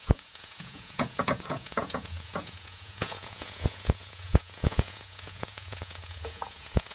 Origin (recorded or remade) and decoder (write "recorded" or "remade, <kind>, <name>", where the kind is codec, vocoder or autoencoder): remade, vocoder, Vocos